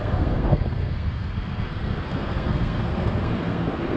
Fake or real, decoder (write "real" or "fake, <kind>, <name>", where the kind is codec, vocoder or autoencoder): fake, codec, SNAC